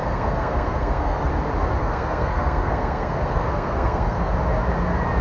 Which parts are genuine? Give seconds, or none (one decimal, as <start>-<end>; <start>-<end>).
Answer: 1.3-1.8; 4.3-5.2